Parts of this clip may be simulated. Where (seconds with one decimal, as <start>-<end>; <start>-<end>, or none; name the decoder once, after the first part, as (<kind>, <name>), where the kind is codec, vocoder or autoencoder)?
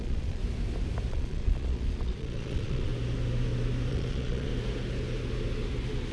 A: 0.0-0.4 (vocoder, Vocos); 1.1-2.9; 3.9-4.5